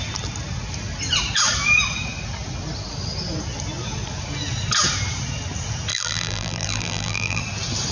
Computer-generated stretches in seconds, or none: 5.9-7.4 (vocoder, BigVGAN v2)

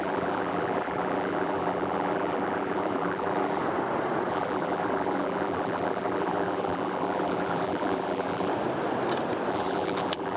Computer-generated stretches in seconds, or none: 0.0-3.6 (vocoder, BigVGAN v2); 4.3-8.5; 9.5-10.4

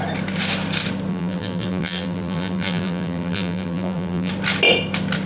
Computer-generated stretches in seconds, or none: 1.1-4.3 (vocoder, BigVGAN v2)

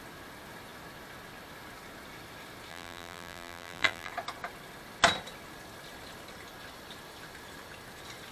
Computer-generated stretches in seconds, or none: 2.7-4.1 (vocoder, BigVGAN v2)

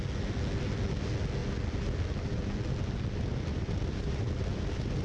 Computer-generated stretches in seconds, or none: none

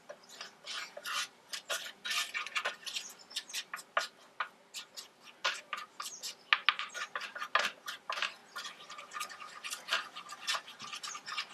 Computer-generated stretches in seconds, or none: 5.4-5.9 (vocoder, BigVGAN v2)

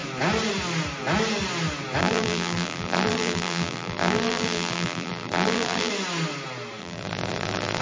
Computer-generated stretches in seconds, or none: 2.0-5.9 (vocoder, BigVGAN v2); 6.8-7.8

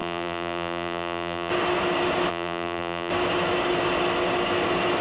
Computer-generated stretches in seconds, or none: 0.0-1.5 (vocoder, BigVGAN v2); 2.3-3.1